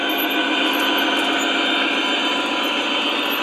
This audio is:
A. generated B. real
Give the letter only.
B